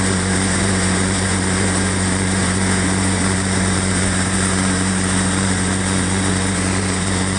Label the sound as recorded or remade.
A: remade